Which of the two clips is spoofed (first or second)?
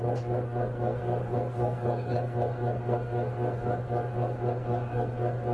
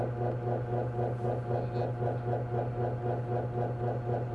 first